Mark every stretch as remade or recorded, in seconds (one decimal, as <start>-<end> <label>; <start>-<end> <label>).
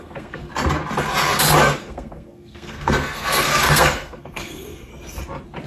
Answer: 0.0-0.5 remade; 0.5-1.8 recorded; 1.8-4.9 remade; 4.9-5.7 recorded